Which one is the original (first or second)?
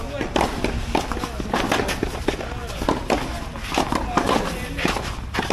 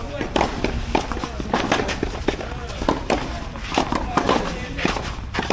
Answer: first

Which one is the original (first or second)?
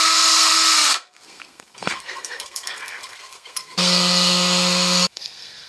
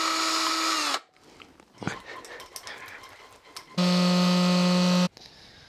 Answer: second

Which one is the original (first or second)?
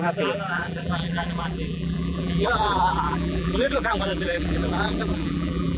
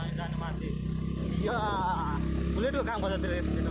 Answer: second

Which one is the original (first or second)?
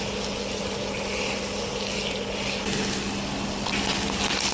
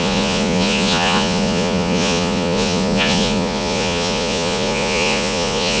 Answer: first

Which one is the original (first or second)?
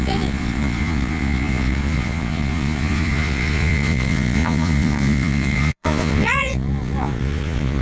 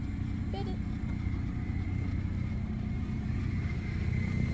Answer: second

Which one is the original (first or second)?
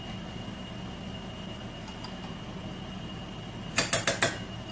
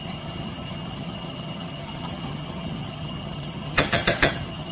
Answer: first